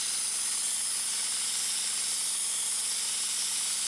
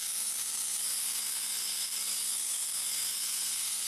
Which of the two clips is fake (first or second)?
second